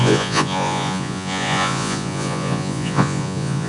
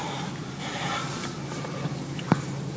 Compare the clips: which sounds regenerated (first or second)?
first